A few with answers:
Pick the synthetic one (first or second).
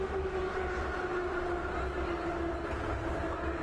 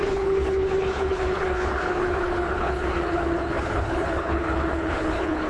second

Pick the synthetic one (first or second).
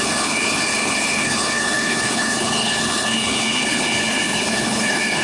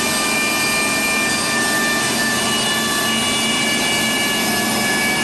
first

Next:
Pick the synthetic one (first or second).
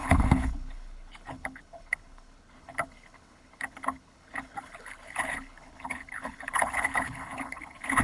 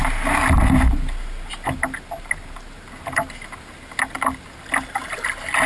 first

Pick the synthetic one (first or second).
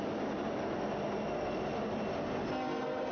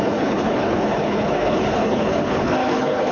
second